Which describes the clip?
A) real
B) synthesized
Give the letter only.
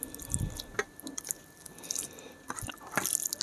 A